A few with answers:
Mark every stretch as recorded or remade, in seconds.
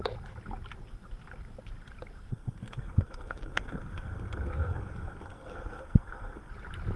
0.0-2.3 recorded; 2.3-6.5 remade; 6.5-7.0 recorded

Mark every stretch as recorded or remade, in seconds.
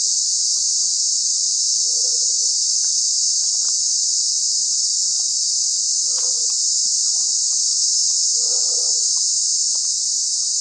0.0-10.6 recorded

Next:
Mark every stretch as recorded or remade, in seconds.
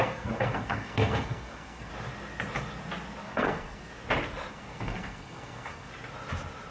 0.0-1.9 remade; 1.9-3.2 recorded; 3.2-3.9 remade; 3.9-4.5 recorded; 4.5-5.9 remade; 5.9-6.7 recorded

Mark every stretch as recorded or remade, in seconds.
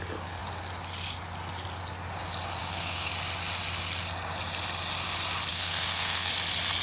0.0-2.6 recorded; 2.6-3.1 remade; 3.1-5.5 recorded; 5.5-6.3 remade; 6.3-6.8 recorded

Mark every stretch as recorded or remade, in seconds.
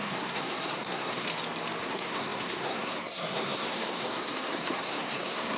0.0-1.3 remade; 1.3-1.8 recorded; 1.8-5.6 remade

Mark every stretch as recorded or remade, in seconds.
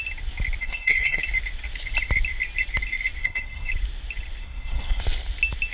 0.0-0.6 recorded; 0.6-1.2 remade; 1.2-3.2 recorded; 3.2-3.7 remade; 3.7-4.4 recorded; 4.4-5.0 remade; 5.0-5.7 recorded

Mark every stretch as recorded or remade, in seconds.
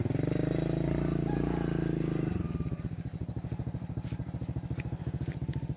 0.0-5.8 recorded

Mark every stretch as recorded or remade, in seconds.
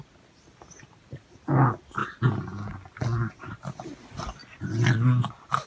0.0-5.7 recorded